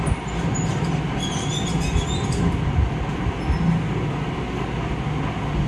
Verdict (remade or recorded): recorded